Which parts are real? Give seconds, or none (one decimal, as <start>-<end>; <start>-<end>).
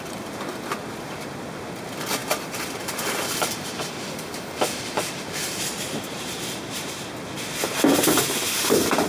0.0-2.2; 7.1-9.1